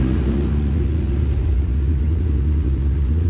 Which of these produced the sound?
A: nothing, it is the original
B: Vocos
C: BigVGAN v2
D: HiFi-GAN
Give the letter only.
B